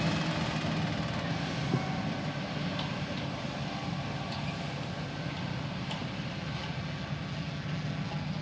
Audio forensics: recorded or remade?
recorded